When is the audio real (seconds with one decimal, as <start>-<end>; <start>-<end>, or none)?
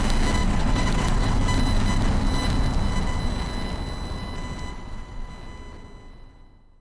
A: 0.0-0.4; 1.4-4.7; 5.3-6.8